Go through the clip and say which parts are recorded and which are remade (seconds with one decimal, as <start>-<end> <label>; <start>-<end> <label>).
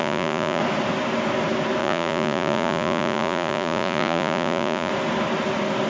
0.0-0.6 remade; 0.6-1.8 recorded; 1.8-4.9 remade; 4.9-5.9 recorded